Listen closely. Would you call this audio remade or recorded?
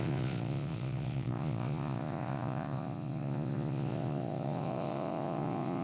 remade